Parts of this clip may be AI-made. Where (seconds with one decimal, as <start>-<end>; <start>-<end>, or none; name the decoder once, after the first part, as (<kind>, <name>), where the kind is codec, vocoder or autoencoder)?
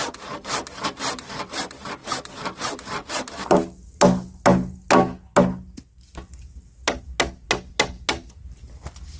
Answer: none